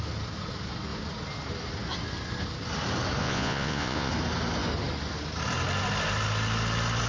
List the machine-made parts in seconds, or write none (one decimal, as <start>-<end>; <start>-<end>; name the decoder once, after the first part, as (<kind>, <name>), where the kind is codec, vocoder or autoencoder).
3.2-4.1 (vocoder, Vocos)